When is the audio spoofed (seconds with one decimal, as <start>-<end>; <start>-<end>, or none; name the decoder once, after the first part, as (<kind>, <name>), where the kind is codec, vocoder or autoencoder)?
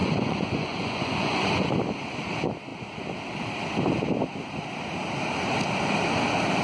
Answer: 0.0-1.7 (vocoder, Vocos)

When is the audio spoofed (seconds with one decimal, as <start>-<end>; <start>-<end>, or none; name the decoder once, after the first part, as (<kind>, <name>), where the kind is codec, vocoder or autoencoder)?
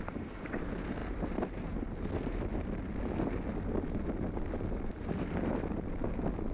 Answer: none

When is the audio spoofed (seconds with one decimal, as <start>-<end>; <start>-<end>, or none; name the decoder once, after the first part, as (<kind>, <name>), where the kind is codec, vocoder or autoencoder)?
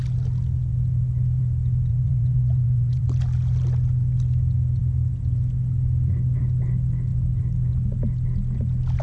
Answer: 1.9-3.0 (vocoder, Vocos)